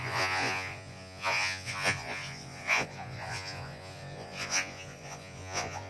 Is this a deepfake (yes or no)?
yes